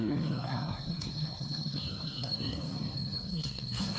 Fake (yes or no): yes